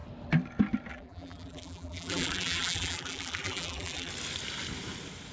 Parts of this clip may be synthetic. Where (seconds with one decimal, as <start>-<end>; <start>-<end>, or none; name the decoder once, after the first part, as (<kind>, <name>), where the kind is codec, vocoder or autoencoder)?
0.9-4.1 (vocoder, BigVGAN v2)

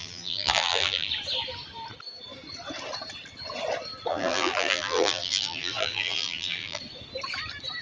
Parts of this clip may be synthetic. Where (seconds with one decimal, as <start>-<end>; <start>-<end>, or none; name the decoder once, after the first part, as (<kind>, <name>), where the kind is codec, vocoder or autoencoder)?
0.0-1.1 (vocoder, BigVGAN v2); 4.1-6.8

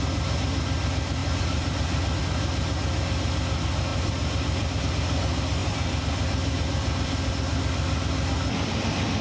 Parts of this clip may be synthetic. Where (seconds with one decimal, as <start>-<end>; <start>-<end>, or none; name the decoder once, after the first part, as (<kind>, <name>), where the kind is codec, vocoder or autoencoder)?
1.2-2.2 (vocoder, BigVGAN v2); 3.9-4.8; 5.6-7.3

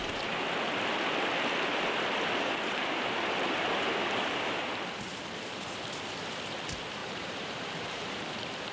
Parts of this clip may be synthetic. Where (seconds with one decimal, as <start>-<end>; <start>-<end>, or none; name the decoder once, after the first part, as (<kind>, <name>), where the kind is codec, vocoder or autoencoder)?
0.0-0.8 (vocoder, BigVGAN v2); 2.8-4.6; 7.0-8.2

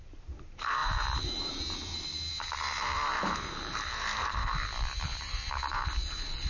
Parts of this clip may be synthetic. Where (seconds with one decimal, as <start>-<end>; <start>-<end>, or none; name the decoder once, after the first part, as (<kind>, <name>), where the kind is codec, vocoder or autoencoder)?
0.0-6.5 (vocoder, BigVGAN v2)

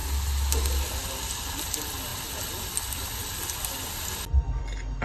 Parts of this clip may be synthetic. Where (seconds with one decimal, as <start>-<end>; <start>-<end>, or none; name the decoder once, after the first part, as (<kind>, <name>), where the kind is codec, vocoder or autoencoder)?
none

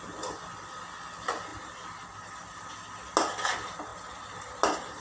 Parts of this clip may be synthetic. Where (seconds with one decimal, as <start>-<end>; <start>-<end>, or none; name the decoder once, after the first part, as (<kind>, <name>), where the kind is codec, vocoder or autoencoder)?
1.5-2.7 (vocoder, BigVGAN v2); 3.9-4.6